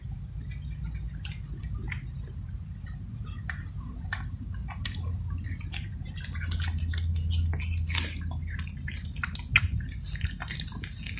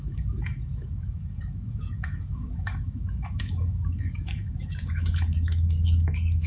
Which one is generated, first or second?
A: second